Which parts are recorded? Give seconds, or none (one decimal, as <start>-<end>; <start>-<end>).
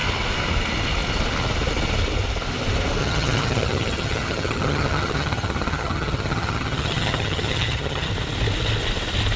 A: 0.0-3.0; 8.1-9.4